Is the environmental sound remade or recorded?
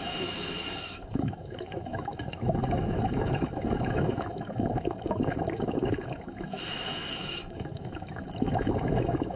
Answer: remade